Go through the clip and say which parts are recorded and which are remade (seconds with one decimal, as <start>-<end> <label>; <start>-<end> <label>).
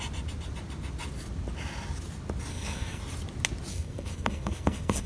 0.0-2.5 recorded; 2.5-3.0 remade; 3.0-3.7 recorded; 3.7-5.1 remade